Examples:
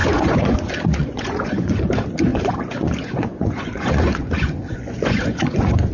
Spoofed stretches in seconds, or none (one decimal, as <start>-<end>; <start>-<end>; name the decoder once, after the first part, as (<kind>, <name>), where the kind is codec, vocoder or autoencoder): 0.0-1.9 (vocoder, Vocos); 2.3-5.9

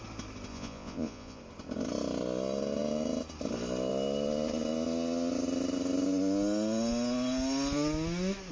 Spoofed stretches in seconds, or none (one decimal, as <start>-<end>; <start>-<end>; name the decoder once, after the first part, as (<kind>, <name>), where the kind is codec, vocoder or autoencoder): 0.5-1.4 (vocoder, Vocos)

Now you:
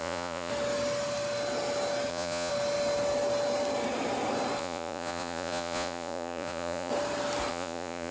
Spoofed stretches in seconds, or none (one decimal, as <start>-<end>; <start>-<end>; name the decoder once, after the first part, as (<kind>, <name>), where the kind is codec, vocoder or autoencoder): 0.0-0.5 (vocoder, Vocos); 2.1-2.5; 4.6-6.9; 7.5-8.1